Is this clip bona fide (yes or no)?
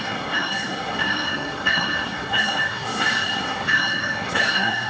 no